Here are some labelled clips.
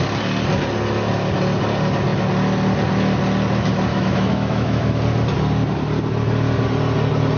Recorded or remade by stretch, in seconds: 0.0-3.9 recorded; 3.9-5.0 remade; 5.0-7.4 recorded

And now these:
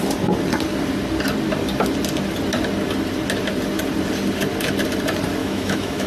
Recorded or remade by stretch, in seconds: 0.0-5.4 recorded; 5.4-6.1 remade

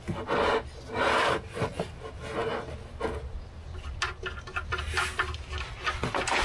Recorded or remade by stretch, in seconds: 0.0-6.4 recorded

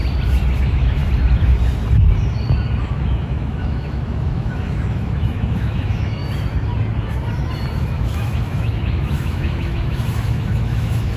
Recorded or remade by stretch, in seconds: 0.0-0.6 recorded; 0.6-1.0 remade; 1.0-2.8 recorded; 2.8-6.2 remade; 6.2-7.7 recorded; 7.7-11.2 remade

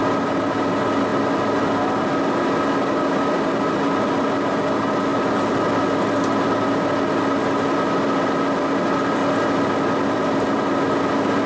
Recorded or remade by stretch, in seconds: 0.0-11.5 recorded

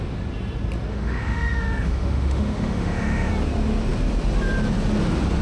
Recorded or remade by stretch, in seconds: 0.0-0.9 recorded; 0.9-3.3 remade; 3.3-5.4 recorded